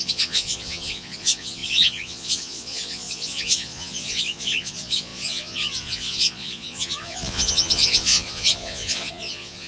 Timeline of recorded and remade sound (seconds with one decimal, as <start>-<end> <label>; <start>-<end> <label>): 0.0-9.7 remade